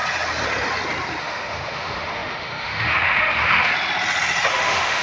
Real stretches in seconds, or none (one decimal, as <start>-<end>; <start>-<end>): 0.0-1.2; 3.7-4.5

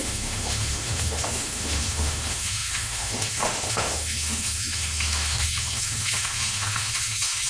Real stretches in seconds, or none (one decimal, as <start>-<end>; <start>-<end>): none

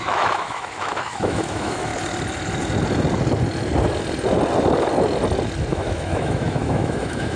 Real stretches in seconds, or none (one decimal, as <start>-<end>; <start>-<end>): 1.9-5.7

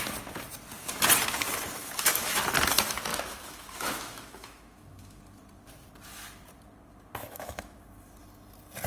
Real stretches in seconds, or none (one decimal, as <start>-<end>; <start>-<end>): 0.0-1.8; 2.4-3.1; 5.2-7.2; 7.8-8.9

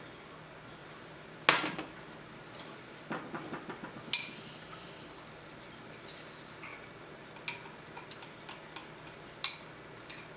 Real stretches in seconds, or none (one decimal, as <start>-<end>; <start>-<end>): 0.0-10.4